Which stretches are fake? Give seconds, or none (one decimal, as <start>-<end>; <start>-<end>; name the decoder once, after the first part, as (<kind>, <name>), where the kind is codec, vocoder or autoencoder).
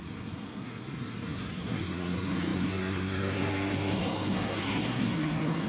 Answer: 0.0-5.7 (codec, SNAC)